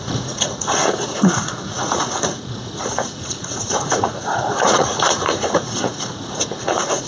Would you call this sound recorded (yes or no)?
no